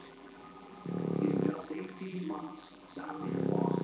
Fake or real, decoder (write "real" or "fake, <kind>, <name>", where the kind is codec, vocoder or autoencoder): fake, vocoder, BigVGAN v2